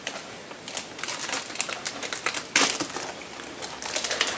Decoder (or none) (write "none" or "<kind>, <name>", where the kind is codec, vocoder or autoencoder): none